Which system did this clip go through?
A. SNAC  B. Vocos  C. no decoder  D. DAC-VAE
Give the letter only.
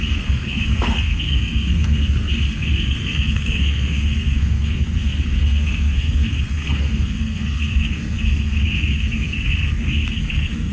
A